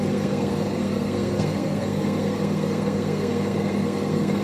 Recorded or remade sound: remade